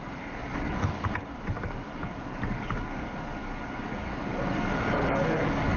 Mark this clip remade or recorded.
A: remade